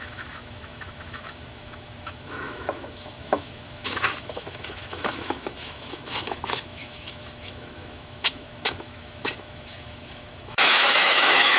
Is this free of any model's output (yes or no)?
no